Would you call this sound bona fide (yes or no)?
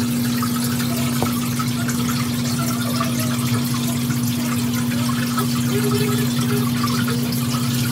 yes